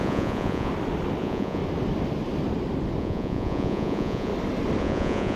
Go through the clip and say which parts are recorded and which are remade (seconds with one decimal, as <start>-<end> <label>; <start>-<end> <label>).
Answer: 0.0-0.7 remade; 0.7-1.2 recorded; 1.2-1.6 remade; 1.6-3.0 recorded; 3.0-4.3 remade; 4.3-4.8 recorded; 4.8-5.4 remade